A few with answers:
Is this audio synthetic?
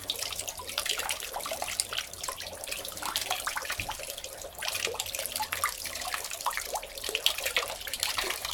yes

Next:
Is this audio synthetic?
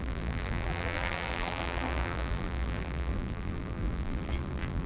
yes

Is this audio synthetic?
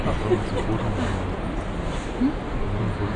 no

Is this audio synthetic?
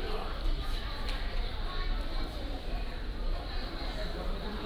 yes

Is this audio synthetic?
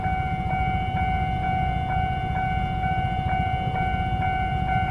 no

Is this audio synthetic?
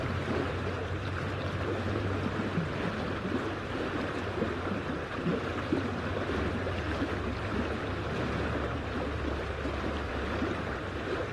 yes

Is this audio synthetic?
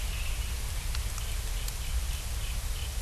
no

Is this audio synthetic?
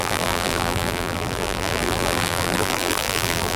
yes